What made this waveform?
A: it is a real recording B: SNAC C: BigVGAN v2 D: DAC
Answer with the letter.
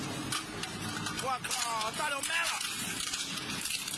A